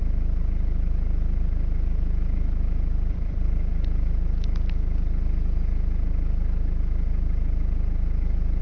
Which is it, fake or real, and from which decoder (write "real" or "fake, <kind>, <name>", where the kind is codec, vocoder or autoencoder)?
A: fake, vocoder, BigVGAN v2